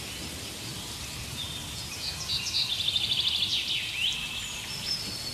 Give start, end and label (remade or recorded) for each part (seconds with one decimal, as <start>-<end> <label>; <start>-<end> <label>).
0.0-5.3 recorded